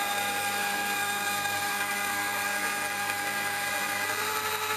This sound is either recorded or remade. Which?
remade